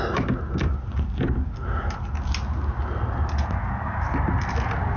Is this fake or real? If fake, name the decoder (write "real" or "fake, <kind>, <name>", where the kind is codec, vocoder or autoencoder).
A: real